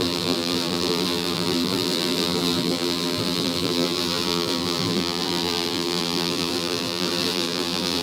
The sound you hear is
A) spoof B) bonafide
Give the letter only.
A